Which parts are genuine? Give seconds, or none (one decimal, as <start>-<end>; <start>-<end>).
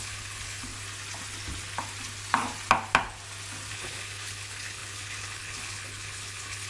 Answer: 0.7-3.7